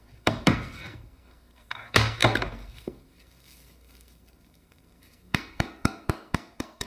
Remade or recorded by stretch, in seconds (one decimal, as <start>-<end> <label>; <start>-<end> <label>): 0.0-6.9 remade